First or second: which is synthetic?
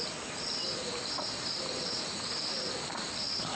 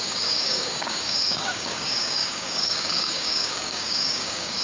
second